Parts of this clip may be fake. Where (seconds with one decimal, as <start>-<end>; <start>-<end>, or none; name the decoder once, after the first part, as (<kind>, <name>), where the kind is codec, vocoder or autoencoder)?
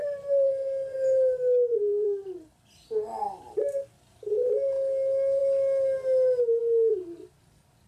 0.0-0.5 (vocoder, BigVGAN v2); 1.7-3.2